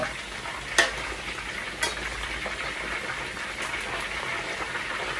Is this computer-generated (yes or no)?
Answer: no